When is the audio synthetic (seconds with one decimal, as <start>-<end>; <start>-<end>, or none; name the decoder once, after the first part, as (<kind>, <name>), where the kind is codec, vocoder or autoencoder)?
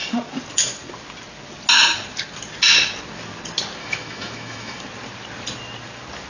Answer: 3.8-4.8 (autoencoder, DAC-VAE)